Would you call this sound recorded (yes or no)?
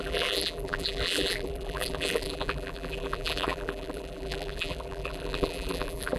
no